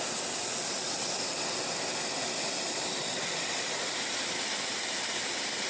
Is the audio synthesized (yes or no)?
no